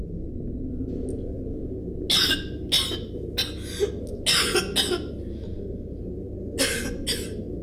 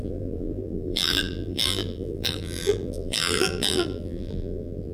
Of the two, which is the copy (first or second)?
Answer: second